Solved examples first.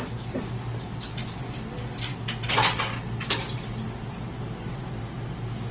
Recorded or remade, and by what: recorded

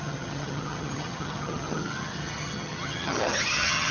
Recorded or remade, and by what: remade, vocoder, HiFi-GAN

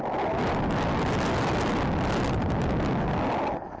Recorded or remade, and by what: recorded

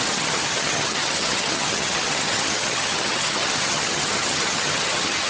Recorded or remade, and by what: remade, vocoder, HiFi-GAN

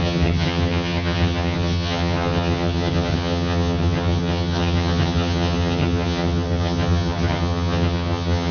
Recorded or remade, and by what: remade, vocoder, HiFi-GAN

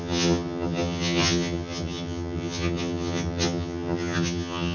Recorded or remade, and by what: remade, vocoder, HiFi-GAN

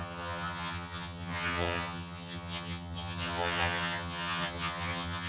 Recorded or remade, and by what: remade, vocoder, HiFi-GAN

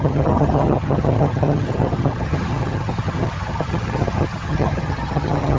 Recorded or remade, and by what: remade, vocoder, HiFi-GAN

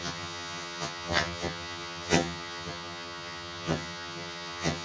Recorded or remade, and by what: remade, vocoder, HiFi-GAN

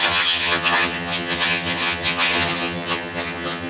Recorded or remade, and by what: remade, vocoder, HiFi-GAN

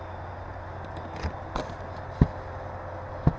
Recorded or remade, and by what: recorded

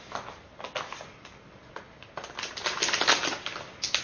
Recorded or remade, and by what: recorded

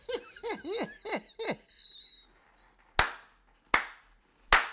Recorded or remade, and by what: recorded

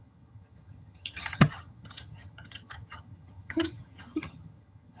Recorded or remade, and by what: remade, vocoder, HiFi-GAN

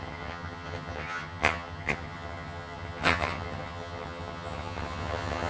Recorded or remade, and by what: remade, vocoder, HiFi-GAN